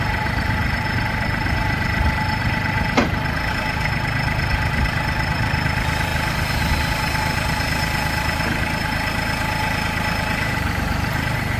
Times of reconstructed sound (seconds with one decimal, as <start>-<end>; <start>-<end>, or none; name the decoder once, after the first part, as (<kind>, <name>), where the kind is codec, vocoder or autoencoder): 0.0-3.0 (vocoder, BigVGAN v2); 3.5-6.1; 6.9-11.6